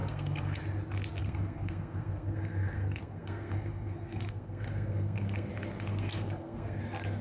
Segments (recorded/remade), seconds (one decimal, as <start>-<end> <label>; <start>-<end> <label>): 0.0-0.6 remade; 0.6-1.2 recorded; 1.2-5.5 remade; 5.5-5.9 recorded; 5.9-6.8 remade; 6.8-7.2 recorded